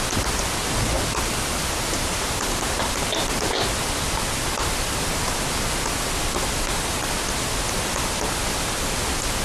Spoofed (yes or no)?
no